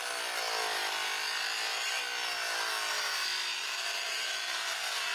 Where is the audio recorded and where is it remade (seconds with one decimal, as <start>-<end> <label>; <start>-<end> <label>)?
0.0-3.5 recorded; 3.5-5.1 remade